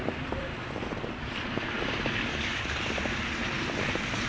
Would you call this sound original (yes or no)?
no